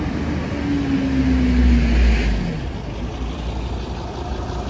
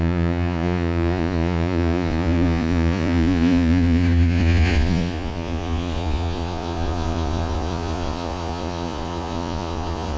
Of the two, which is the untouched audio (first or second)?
first